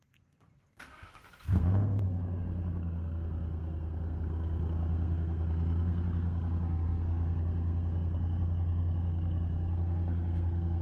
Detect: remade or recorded remade